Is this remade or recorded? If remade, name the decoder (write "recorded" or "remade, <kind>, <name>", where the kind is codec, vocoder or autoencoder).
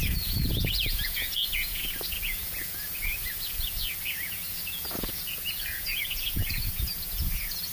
remade, vocoder, Vocos